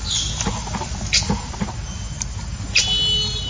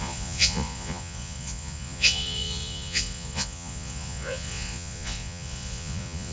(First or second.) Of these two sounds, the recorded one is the first